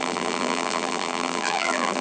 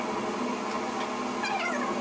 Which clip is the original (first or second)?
second